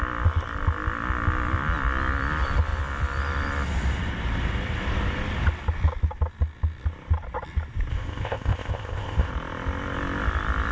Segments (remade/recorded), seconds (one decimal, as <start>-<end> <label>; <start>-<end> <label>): 0.0-7.9 recorded; 7.9-9.3 remade; 9.3-10.7 recorded